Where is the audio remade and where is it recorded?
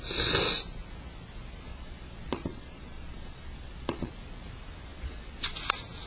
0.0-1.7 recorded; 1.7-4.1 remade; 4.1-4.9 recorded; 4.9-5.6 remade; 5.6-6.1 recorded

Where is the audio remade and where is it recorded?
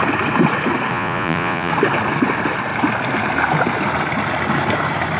0.0-0.9 recorded; 0.9-1.7 remade; 1.7-5.2 recorded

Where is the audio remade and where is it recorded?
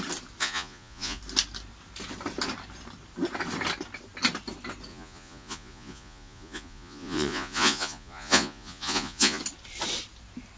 0.0-0.4 recorded; 0.4-1.2 remade; 1.2-4.9 recorded; 4.9-9.4 remade; 9.4-10.6 recorded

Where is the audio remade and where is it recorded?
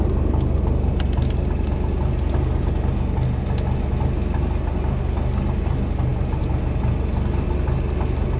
0.0-8.4 recorded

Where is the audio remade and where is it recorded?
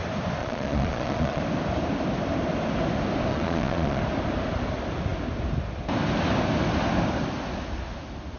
0.0-0.4 recorded; 0.4-1.4 remade; 1.4-3.3 recorded; 3.3-4.0 remade; 4.0-8.4 recorded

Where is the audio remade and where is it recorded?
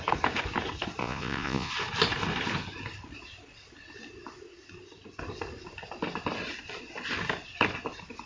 0.0-1.0 recorded; 1.0-1.7 remade; 1.7-8.3 recorded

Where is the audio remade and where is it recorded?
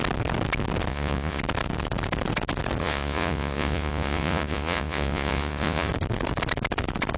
0.0-0.9 recorded; 0.9-1.4 remade; 1.4-2.8 recorded; 2.8-5.9 remade; 5.9-7.2 recorded